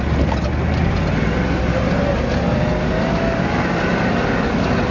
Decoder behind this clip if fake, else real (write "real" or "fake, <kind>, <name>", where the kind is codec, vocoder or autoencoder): real